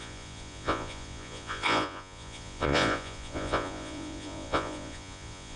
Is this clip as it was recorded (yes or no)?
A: no